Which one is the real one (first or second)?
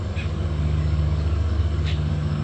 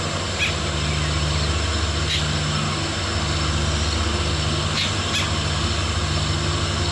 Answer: second